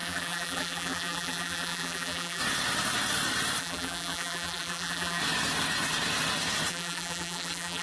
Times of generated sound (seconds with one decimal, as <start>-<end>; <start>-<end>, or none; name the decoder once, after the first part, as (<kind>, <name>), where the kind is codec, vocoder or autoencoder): 0.0-2.4 (vocoder, BigVGAN v2); 3.6-5.2; 6.7-7.8